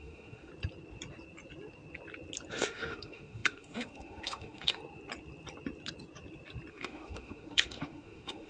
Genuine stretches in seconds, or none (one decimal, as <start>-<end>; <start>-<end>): 0.5-2.5; 4.8-6.7